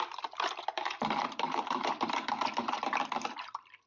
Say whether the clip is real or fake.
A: fake